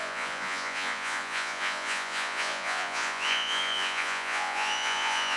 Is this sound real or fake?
fake